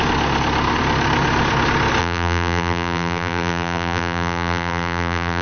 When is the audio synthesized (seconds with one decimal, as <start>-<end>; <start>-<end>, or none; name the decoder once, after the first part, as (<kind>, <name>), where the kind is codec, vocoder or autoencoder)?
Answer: 2.0-5.4 (vocoder, BigVGAN v2)